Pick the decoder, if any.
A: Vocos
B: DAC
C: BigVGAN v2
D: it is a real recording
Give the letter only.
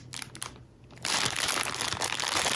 D